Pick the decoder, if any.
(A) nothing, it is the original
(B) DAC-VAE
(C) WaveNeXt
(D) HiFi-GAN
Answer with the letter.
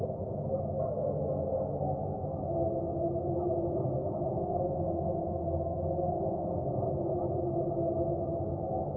A